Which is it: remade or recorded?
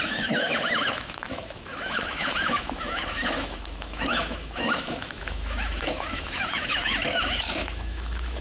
remade